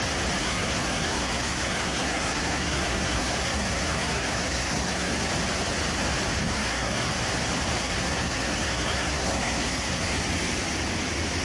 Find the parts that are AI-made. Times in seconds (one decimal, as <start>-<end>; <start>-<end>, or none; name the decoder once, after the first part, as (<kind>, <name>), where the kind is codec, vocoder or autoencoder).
0.4-5.3 (codec, SNAC); 6.4-7.1; 7.8-10.2

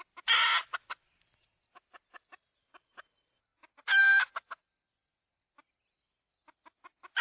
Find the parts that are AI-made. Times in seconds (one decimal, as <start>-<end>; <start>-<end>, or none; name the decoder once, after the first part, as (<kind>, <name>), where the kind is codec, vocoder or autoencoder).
0.7-2.4 (vocoder, BigVGAN v2); 3.5-6.3

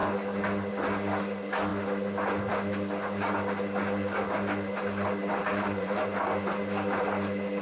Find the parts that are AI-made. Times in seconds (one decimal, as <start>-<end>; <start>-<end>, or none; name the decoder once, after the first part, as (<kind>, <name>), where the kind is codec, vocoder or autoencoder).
5.5-6.0 (vocoder, BigVGAN v2)

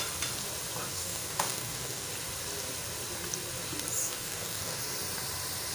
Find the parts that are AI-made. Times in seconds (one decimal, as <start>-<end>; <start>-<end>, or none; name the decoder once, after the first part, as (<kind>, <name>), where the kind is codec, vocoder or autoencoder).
0.9-2.1 (codec, DAC); 4.0-4.8